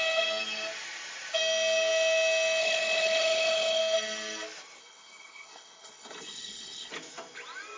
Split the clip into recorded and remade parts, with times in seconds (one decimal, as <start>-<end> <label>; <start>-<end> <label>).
0.0-2.6 recorded; 2.6-3.8 remade; 3.8-4.8 recorded; 4.8-6.9 remade; 6.9-7.8 recorded